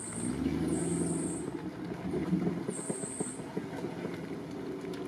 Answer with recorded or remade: recorded